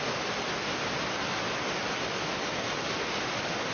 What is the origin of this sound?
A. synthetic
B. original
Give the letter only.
B